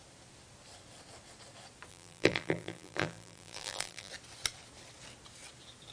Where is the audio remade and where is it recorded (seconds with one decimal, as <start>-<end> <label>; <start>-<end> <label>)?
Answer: 0.0-1.9 recorded; 1.9-4.1 remade; 4.1-5.9 recorded